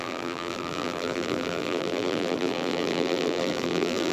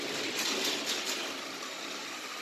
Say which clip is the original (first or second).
second